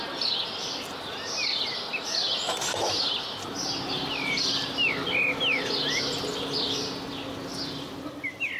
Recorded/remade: recorded